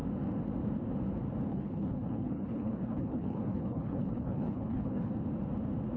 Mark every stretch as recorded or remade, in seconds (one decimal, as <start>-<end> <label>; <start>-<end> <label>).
0.0-1.5 recorded; 1.5-5.1 remade; 5.1-6.0 recorded

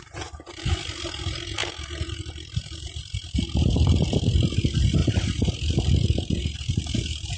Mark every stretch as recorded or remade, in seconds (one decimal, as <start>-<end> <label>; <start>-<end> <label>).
0.0-7.4 recorded

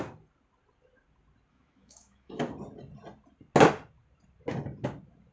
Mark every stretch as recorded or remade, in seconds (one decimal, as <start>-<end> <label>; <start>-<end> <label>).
0.0-1.5 recorded; 1.5-2.4 remade; 2.4-5.3 recorded

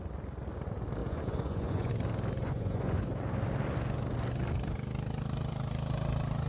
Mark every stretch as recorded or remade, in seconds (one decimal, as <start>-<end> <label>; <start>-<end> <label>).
0.0-1.0 recorded; 1.0-1.9 remade; 1.9-2.4 recorded; 2.4-3.1 remade; 3.1-6.5 recorded

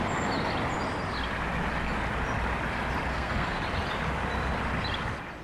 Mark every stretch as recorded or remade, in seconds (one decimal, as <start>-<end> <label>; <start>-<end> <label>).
0.0-3.1 recorded; 3.1-3.6 remade; 3.6-5.4 recorded